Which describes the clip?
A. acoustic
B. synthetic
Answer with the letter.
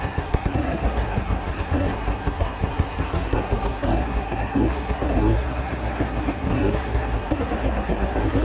B